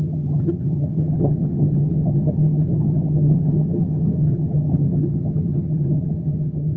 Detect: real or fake fake